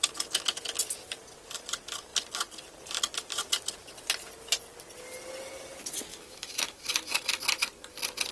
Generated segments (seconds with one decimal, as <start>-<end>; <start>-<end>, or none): 6.1-7.4